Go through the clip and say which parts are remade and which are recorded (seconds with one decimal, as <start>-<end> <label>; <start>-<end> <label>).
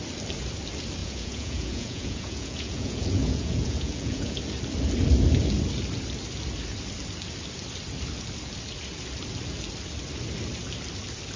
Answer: 0.0-1.0 recorded; 1.0-4.4 remade; 4.4-11.4 recorded